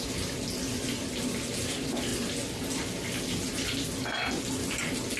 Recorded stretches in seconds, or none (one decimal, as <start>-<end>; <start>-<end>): 0.0-5.2